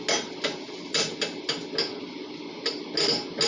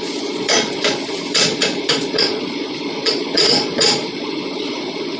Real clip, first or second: first